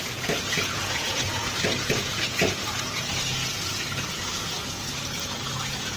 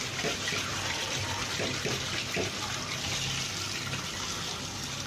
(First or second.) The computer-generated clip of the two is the first